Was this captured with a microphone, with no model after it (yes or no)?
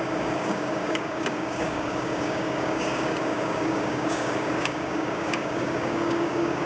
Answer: no